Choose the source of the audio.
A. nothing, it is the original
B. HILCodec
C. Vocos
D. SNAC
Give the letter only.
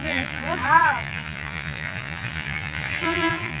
C